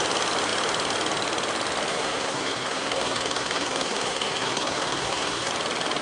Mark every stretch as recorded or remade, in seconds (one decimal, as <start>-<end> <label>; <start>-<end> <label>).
0.0-1.9 recorded; 1.9-5.5 remade; 5.5-6.0 recorded